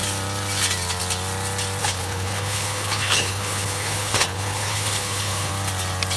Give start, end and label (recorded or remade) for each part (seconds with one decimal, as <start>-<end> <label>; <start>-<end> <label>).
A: 0.0-1.8 recorded; 1.8-5.5 remade; 5.5-6.2 recorded